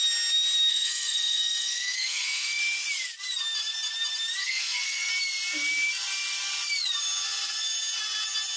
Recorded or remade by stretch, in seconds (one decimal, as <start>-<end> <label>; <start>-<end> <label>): 0.0-0.7 recorded; 0.7-2.6 remade; 2.6-4.4 recorded; 4.4-5.1 remade; 5.1-8.6 recorded